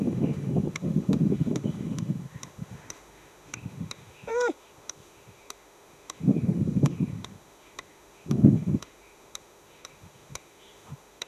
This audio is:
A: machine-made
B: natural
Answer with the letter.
A